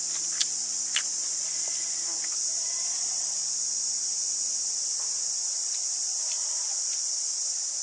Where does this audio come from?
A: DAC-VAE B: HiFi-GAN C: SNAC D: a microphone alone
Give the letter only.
D